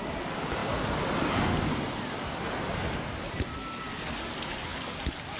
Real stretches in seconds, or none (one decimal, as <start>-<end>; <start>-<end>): 0.0-5.4